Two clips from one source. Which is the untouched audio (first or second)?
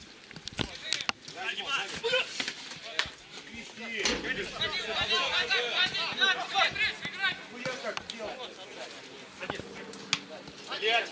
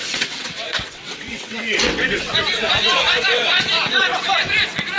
first